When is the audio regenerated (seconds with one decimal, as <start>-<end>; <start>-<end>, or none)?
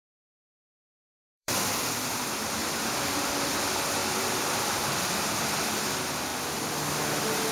0.4-1.6; 4.0-5.1